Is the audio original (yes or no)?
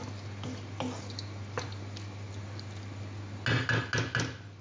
yes